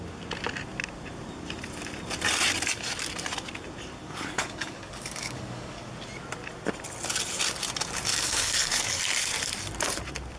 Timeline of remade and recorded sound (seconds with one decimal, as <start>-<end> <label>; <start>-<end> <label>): 0.0-4.0 recorded; 4.0-5.9 remade; 5.9-8.1 recorded; 8.1-9.0 remade; 9.0-10.4 recorded